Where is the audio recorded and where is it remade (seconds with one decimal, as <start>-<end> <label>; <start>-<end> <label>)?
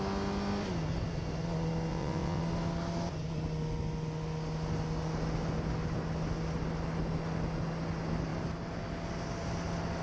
0.0-1.9 recorded; 1.9-2.4 remade; 2.4-10.0 recorded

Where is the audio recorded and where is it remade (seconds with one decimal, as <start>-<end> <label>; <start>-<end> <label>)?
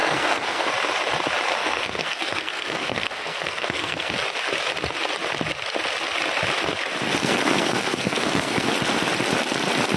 0.0-0.7 remade; 0.7-1.6 recorded; 1.6-4.1 remade; 4.1-7.2 recorded; 7.2-8.7 remade; 8.7-10.0 recorded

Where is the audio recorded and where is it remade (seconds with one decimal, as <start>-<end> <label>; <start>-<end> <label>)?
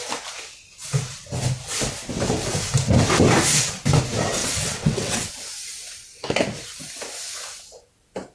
0.0-4.4 recorded; 4.4-5.3 remade; 5.3-8.3 recorded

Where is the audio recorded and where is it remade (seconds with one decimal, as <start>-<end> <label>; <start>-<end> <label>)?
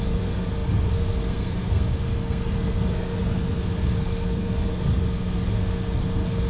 0.0-6.5 remade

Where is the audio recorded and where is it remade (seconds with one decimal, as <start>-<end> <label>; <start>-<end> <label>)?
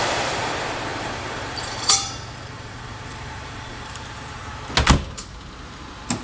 0.0-4.5 remade; 4.5-6.2 recorded